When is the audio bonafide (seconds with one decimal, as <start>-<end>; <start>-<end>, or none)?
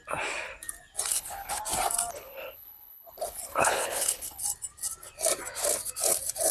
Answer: 0.0-1.1; 1.6-2.1; 4.4-6.5